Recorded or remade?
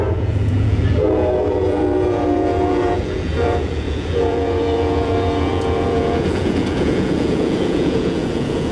remade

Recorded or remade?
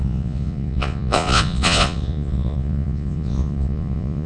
remade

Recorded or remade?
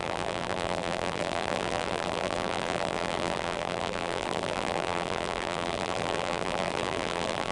remade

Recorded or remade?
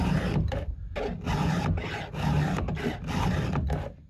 recorded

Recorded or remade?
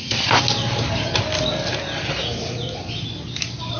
recorded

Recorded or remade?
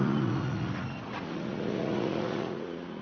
remade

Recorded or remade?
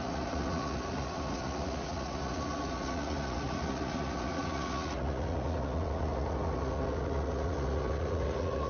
remade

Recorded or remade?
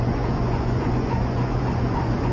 remade